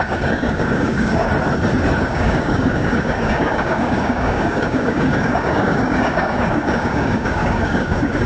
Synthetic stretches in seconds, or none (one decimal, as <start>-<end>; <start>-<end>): 0.0-1.3; 2.0-8.3